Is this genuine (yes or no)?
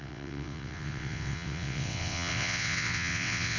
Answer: no